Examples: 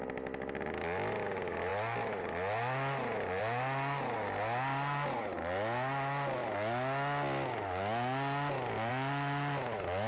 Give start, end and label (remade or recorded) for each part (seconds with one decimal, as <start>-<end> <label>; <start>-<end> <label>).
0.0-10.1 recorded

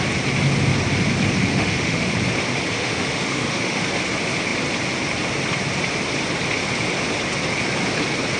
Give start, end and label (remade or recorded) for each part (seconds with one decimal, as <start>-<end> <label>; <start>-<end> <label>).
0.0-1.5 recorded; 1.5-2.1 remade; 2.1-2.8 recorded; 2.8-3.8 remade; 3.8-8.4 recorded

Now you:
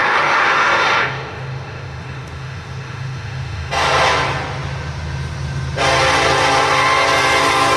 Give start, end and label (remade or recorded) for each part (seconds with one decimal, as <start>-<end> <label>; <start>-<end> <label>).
0.0-3.7 remade; 3.7-7.8 recorded

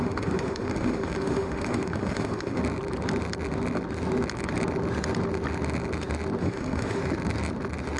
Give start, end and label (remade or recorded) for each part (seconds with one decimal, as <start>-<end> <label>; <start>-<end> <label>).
0.0-2.6 remade; 2.6-6.4 recorded; 6.4-7.0 remade; 7.0-8.0 recorded